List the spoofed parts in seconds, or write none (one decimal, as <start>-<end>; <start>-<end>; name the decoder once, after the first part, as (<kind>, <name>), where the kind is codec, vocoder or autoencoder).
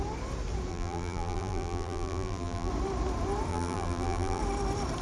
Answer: 0.7-2.7 (vocoder, BigVGAN v2); 3.5-4.4